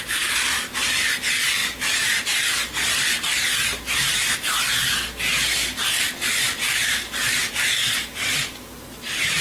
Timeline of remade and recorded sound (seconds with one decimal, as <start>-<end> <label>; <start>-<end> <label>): 0.0-7.8 recorded; 7.8-9.4 remade